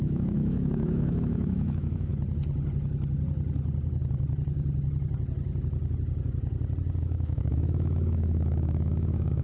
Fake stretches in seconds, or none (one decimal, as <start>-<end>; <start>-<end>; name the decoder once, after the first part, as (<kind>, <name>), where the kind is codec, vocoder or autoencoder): 0.0-2.1 (autoencoder, DAC-VAE); 7.0-9.4